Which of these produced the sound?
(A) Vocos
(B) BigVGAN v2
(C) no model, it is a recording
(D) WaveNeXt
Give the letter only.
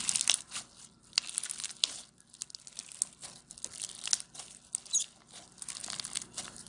C